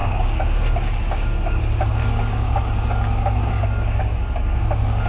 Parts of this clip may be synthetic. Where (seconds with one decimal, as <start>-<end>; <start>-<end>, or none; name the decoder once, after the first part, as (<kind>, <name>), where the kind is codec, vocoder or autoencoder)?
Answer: 0.0-1.6 (codec, DAC); 2.0-5.1